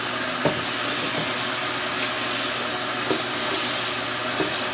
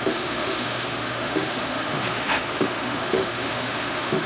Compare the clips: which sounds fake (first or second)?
second